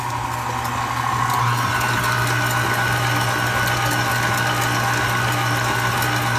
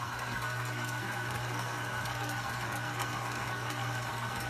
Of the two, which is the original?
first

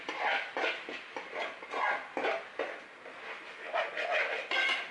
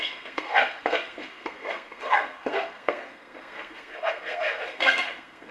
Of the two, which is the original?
first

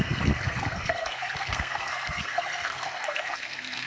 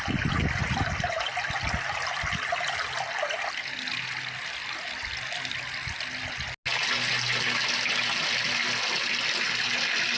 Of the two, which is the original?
second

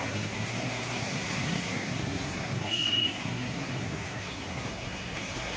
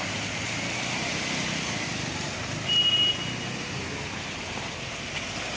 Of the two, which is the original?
second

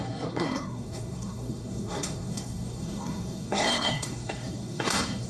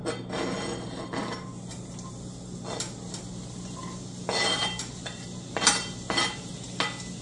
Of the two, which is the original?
second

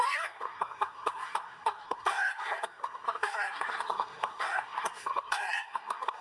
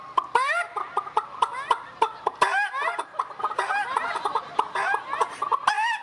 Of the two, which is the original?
second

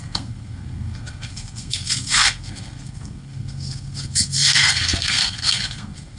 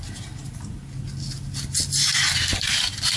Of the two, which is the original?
second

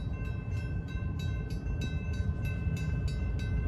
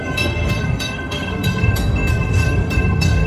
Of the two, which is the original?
first